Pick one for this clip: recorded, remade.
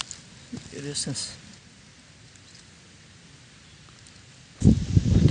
recorded